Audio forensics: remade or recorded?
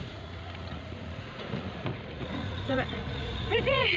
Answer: remade